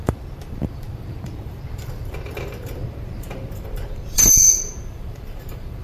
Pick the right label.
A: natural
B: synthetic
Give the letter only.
B